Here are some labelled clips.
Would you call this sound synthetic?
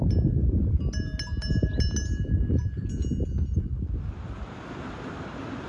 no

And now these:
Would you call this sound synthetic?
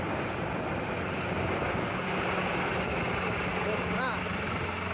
no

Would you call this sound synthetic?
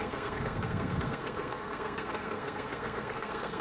yes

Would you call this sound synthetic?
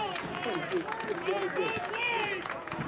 yes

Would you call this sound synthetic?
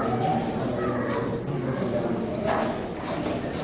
no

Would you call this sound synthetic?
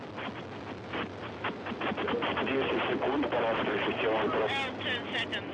no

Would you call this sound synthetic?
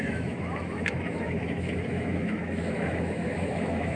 yes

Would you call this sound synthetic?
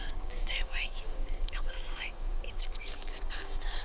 yes